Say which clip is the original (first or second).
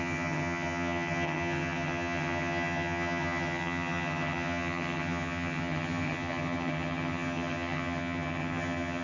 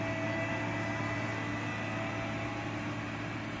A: second